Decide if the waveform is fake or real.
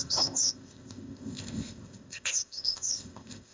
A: fake